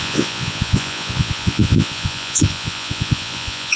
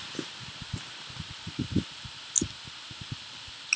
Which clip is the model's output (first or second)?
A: first